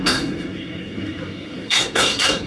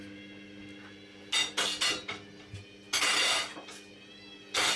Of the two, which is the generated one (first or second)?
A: first